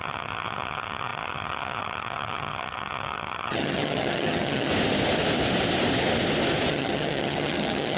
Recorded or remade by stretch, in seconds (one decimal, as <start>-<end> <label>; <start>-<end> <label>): 0.0-4.7 remade; 4.7-6.7 recorded; 6.7-8.0 remade